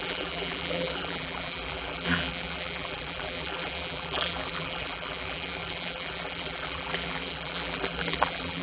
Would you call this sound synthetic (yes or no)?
yes